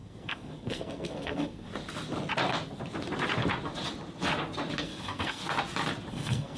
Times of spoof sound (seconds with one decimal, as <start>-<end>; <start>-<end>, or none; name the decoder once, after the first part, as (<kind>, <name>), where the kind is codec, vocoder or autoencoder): 0.0-1.7 (codec, SNAC); 4.8-5.4; 6.1-6.6